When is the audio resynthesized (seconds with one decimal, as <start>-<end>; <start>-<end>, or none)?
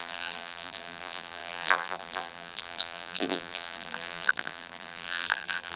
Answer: 0.0-5.8